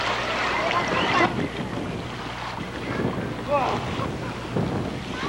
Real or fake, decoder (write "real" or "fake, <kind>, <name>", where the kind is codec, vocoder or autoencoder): real